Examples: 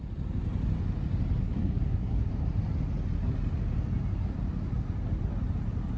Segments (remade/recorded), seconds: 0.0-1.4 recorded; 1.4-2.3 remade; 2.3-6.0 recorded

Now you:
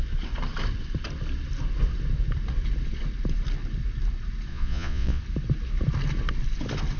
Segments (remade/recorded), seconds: 0.0-4.5 recorded; 4.5-5.2 remade; 5.2-7.0 recorded

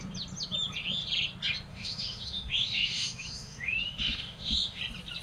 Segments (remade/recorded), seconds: 0.0-1.7 recorded; 1.7-4.8 remade; 4.8-5.2 recorded

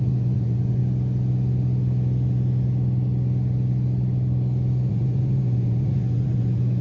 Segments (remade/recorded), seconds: 0.0-0.8 remade; 0.8-4.9 recorded; 4.9-6.8 remade

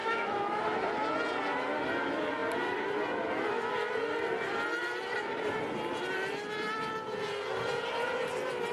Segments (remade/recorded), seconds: 0.0-0.6 remade; 0.6-8.7 recorded

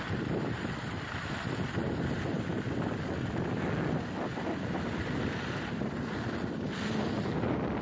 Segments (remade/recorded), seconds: 0.0-7.8 recorded

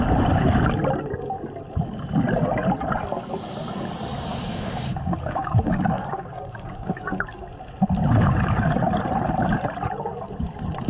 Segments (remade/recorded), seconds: 0.0-4.3 recorded; 4.3-7.4 remade; 7.4-10.9 recorded

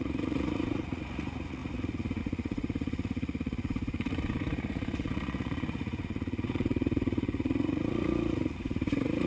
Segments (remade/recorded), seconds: 0.0-9.3 remade